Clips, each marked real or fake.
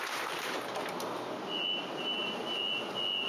real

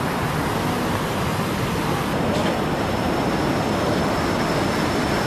real